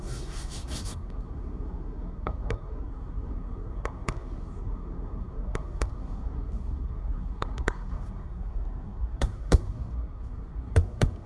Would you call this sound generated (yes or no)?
yes